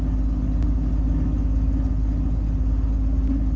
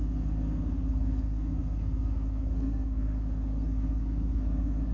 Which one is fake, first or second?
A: second